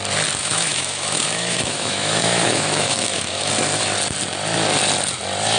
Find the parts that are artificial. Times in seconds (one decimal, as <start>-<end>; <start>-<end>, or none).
0.4-3.5